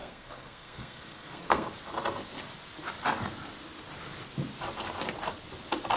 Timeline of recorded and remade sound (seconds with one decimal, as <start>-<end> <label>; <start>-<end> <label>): 0.0-1.7 remade; 1.7-6.0 recorded